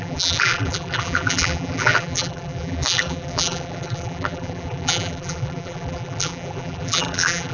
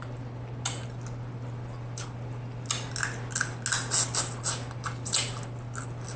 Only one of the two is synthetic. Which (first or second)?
first